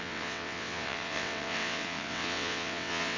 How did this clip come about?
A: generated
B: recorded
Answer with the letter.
A